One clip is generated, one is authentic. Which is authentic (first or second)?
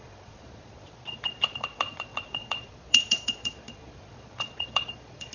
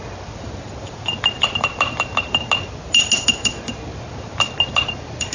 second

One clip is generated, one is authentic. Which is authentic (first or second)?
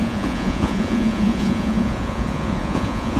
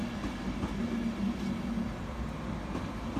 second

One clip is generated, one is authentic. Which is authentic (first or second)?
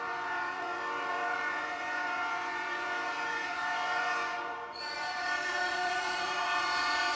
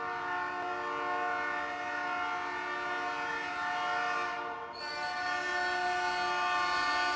second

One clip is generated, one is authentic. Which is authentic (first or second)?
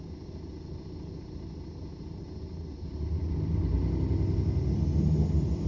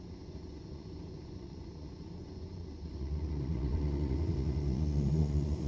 first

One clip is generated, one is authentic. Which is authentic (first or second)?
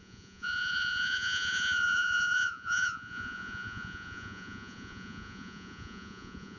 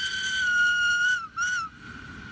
second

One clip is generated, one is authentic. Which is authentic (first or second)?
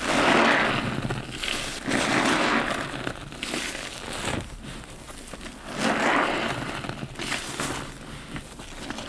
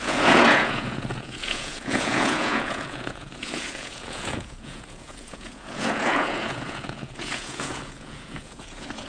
first